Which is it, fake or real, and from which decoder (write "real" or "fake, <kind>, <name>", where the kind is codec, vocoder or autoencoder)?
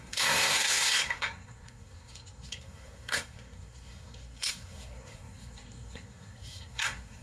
fake, codec, SNAC